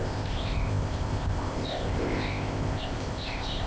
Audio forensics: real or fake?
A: fake